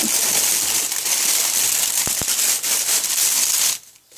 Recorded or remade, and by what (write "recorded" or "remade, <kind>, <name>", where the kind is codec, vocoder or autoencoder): recorded